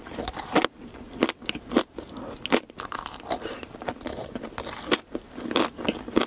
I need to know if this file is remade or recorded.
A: recorded